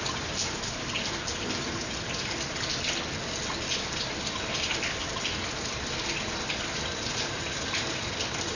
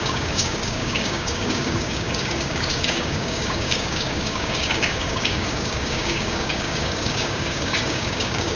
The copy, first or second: second